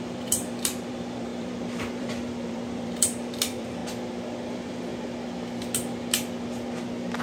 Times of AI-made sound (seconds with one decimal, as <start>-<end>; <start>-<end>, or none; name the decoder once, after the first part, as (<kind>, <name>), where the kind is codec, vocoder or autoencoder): 0.0-3.8 (vocoder, BigVGAN v2); 4.5-4.9